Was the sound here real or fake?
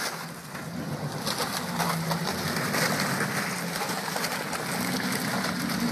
real